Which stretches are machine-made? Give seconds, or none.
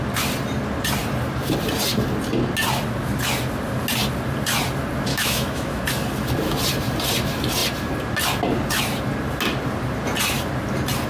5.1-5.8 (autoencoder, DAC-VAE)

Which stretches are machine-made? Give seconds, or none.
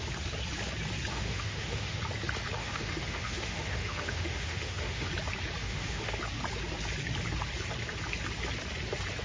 1.1-2.0 (autoencoder, DAC-VAE); 2.6-5.1; 5.6-6.1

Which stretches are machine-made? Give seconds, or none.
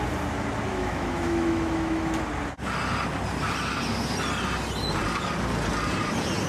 0.7-2.2 (autoencoder, DAC-VAE)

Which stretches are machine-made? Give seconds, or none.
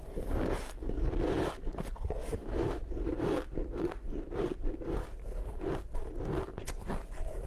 2.2-2.8 (autoencoder, DAC-VAE)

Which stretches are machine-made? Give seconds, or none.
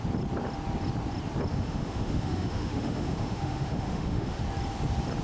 1.5-4.4 (autoencoder, DAC-VAE)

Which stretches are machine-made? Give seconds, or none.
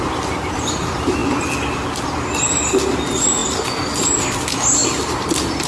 none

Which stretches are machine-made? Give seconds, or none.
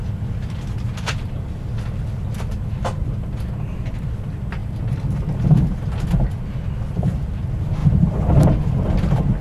none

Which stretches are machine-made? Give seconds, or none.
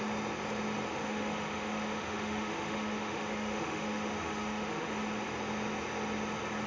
0.9-4.9 (autoencoder, DAC-VAE)